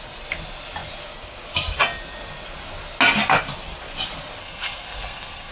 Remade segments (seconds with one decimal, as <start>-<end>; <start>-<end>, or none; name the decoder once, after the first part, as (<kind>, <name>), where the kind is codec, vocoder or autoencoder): 4.4-5.5 (codec, SNAC)